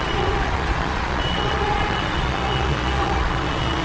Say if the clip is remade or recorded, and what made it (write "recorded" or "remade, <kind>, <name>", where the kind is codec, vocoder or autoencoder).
remade, vocoder, Vocos